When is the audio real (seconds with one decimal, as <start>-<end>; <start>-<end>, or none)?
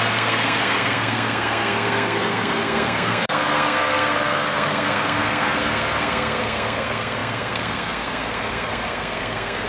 none